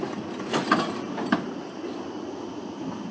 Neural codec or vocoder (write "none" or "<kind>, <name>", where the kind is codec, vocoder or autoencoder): none